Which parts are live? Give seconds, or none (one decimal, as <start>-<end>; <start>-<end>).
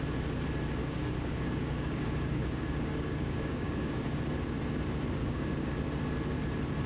0.0-0.8; 4.2-5.2; 5.7-6.9